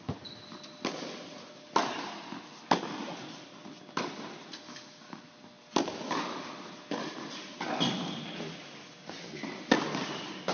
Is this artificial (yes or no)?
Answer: no